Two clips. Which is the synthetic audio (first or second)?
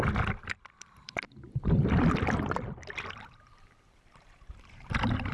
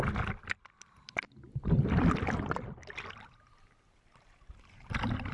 first